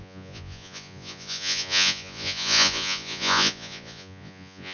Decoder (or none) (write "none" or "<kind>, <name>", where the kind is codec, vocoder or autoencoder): vocoder, Vocos